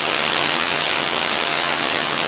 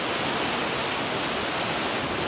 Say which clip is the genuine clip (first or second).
second